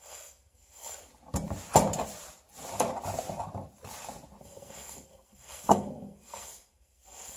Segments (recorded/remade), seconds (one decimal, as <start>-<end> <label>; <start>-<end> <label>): 0.0-1.1 remade; 1.1-4.4 recorded; 4.4-7.4 remade